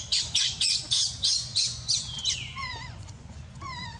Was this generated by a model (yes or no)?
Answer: yes